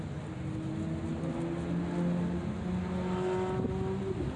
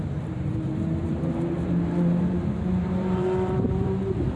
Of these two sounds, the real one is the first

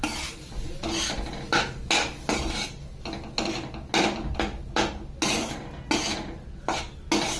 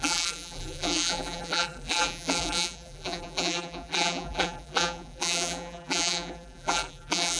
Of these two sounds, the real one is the first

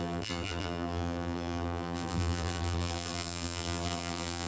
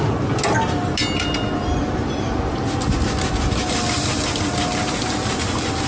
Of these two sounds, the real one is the second